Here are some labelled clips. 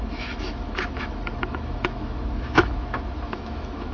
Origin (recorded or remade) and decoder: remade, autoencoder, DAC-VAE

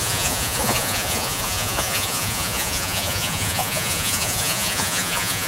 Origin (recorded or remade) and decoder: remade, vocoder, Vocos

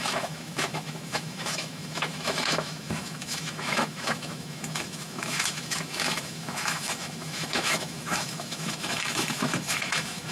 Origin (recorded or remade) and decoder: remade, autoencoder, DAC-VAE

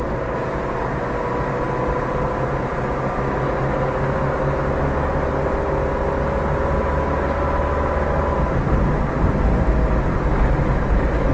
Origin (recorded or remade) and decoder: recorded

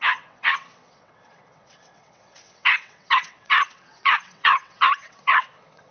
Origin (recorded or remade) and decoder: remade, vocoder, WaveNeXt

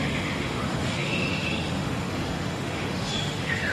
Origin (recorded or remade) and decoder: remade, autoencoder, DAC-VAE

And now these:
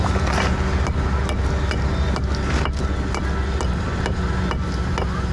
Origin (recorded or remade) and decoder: recorded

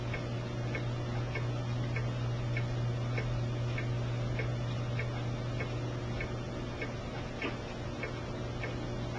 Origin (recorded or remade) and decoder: recorded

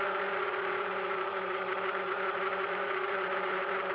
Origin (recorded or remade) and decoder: remade, vocoder, BigVGAN v2